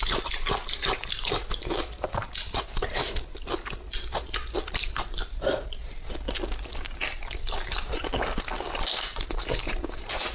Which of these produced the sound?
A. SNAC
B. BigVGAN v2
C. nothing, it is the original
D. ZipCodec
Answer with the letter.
C